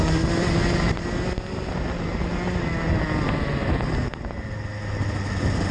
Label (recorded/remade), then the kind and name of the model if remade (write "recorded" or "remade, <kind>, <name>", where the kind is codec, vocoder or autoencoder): recorded